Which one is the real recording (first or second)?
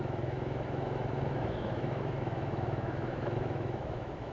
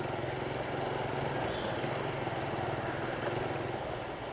second